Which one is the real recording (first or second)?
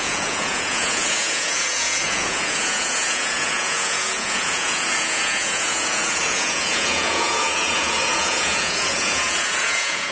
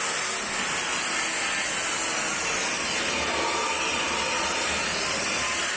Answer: second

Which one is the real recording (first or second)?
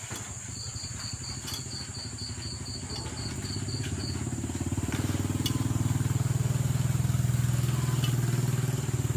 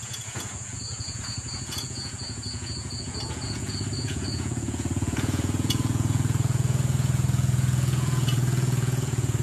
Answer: first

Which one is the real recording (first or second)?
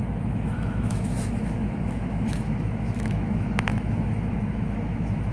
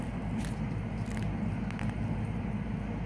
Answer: second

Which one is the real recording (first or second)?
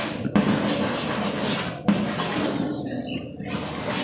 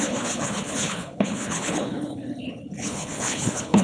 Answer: first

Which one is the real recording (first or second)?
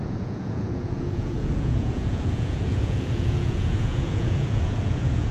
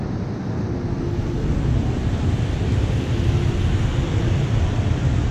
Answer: second